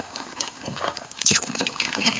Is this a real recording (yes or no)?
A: no